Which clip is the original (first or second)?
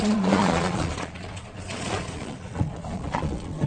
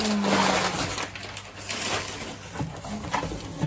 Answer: second